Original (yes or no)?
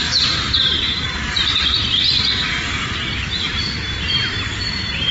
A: no